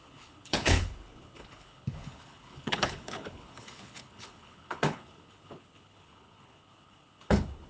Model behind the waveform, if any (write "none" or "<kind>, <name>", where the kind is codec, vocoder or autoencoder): codec, HILCodec